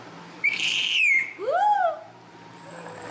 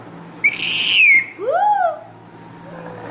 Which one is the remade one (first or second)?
first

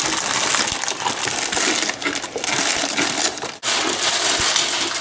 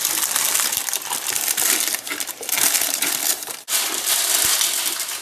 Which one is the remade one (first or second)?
second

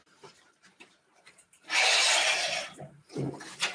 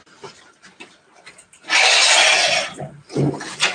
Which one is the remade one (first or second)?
first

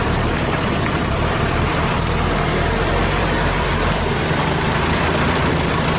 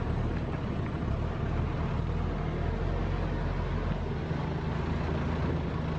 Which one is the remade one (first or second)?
first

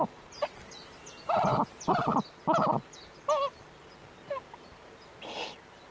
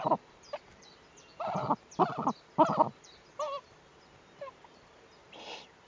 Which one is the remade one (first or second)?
second